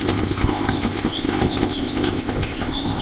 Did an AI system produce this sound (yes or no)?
yes